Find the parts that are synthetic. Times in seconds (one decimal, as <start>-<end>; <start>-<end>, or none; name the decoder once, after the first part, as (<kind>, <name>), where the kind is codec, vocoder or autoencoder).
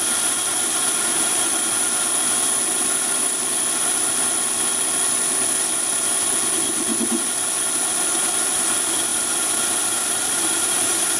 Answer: 0.5-1.6 (vocoder, BigVGAN v2); 9.1-11.2